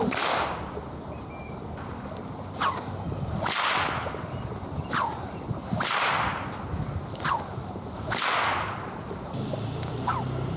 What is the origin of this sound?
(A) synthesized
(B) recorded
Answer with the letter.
B